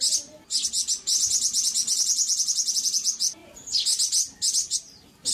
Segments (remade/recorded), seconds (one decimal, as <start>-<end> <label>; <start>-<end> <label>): 0.0-5.3 recorded